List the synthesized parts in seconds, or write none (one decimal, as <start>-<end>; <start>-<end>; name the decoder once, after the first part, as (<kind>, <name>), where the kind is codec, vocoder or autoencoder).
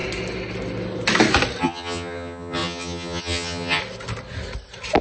1.6-3.8 (vocoder, HiFi-GAN)